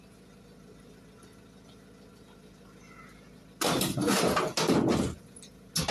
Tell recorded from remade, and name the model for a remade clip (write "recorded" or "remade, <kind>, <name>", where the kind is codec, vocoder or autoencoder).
recorded